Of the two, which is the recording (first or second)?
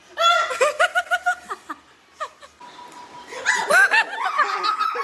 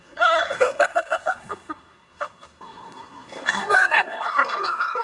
first